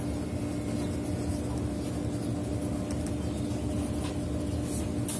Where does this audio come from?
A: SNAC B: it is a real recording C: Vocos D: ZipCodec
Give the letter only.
B